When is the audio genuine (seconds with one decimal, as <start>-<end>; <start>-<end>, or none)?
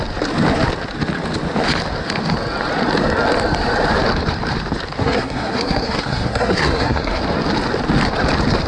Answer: 0.0-5.0; 7.2-8.7